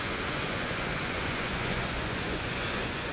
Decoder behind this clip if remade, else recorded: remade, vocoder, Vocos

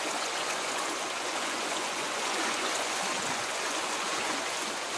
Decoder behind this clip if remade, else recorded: remade, vocoder, Vocos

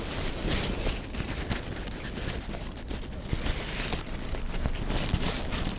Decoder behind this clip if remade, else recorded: recorded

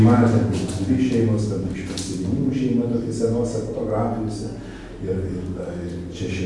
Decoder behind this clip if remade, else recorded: recorded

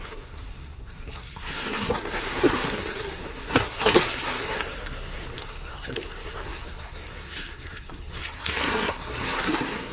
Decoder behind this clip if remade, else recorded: remade, codec, SNAC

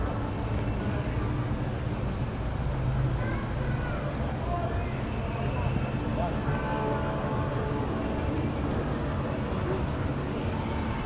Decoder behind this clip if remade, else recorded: recorded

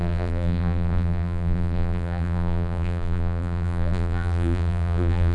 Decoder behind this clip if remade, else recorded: remade, vocoder, BigVGAN v2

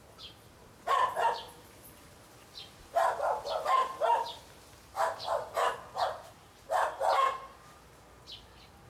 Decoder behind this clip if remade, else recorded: remade, vocoder, BigVGAN v2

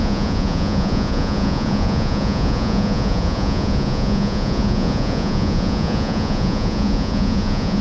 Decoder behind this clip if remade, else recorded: remade, vocoder, Vocos